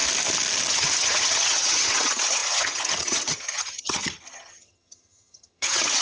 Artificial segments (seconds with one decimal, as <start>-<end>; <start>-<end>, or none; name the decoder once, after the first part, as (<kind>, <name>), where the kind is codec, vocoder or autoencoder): 0.7-6.0 (vocoder, HiFi-GAN)